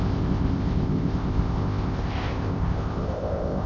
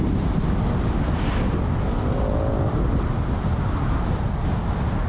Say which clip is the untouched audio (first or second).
second